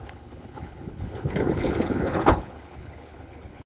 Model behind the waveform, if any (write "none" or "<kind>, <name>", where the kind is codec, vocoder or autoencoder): codec, HILCodec